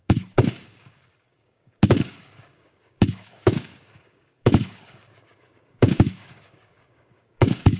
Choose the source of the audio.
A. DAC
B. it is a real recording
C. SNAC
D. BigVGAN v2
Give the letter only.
A